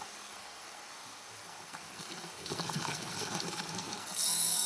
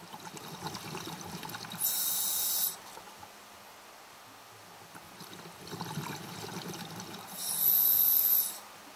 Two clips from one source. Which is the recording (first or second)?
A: second